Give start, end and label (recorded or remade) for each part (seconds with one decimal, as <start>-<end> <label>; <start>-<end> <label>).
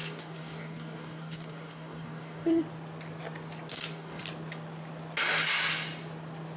0.0-2.6 remade; 2.6-3.7 recorded; 3.7-4.2 remade; 4.2-6.6 recorded